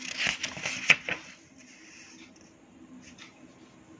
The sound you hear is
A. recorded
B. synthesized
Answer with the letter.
A